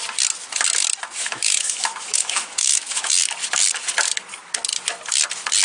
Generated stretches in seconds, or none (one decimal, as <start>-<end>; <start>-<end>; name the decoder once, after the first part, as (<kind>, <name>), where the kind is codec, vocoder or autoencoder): 1.2-3.1 (autoencoder, DAC-VAE)